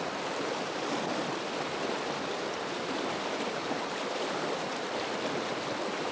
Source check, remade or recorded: remade